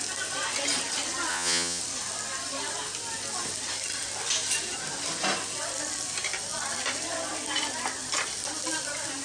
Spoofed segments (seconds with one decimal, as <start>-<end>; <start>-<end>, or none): 1.3-1.8